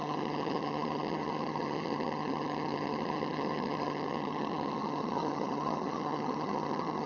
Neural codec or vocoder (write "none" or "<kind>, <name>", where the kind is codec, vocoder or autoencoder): vocoder, HiFi-GAN